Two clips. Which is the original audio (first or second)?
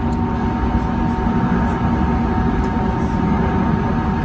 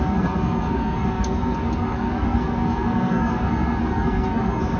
first